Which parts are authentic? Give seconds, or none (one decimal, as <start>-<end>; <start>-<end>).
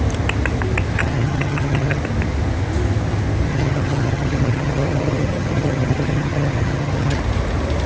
0.0-1.0; 2.0-3.5; 7.2-7.9